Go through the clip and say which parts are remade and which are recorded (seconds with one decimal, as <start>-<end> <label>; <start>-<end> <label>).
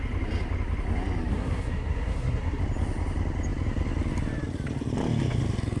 0.0-1.3 recorded; 1.3-2.6 remade; 2.6-5.8 recorded